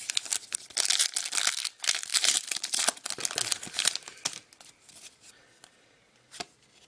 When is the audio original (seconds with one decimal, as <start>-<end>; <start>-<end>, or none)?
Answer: 0.0-2.1; 2.8-6.9